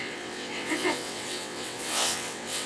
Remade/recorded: remade